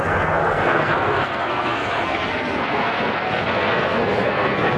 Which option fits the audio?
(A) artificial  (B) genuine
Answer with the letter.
A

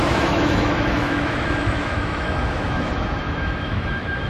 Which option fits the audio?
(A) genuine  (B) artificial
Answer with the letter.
B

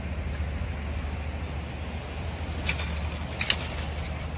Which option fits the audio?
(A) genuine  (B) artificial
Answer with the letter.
A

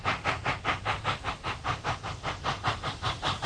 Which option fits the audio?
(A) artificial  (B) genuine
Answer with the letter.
B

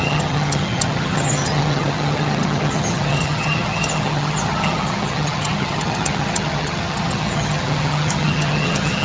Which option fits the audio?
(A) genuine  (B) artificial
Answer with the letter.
B